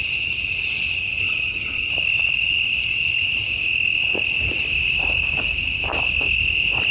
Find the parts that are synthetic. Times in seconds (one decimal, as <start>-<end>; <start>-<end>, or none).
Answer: 1.2-1.9